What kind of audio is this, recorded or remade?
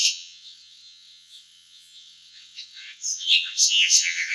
remade